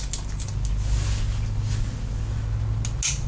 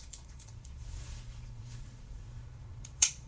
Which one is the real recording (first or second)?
first